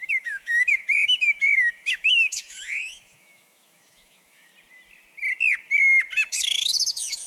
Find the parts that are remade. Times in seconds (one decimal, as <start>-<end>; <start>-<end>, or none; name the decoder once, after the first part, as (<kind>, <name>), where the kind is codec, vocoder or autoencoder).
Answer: 0.0-4.5 (autoencoder, DAC-VAE); 6.3-7.3